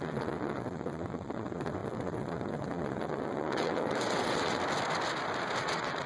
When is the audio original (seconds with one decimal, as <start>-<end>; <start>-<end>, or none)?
4.6-5.6